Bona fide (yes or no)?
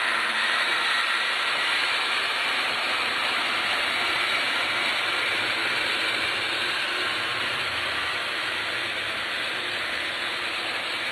no